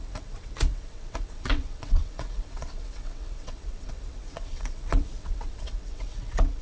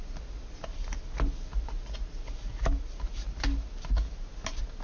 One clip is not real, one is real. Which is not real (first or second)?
first